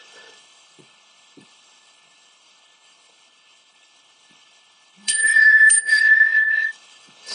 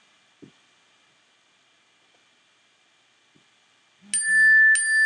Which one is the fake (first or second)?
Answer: first